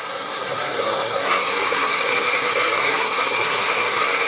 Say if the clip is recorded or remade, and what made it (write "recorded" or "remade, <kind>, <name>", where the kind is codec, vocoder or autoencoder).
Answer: remade, codec, SNAC